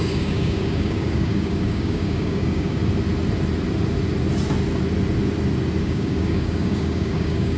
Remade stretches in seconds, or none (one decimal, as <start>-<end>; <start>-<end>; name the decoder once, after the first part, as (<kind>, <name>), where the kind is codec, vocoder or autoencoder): 0.0-2.8 (codec, DAC); 5.8-7.6